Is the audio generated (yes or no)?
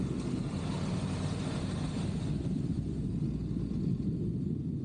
no